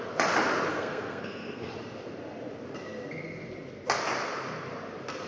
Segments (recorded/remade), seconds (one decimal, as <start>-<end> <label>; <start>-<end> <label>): 0.0-0.7 recorded; 0.7-1.7 remade; 1.7-5.3 recorded